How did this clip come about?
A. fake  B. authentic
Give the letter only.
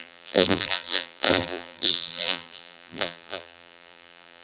A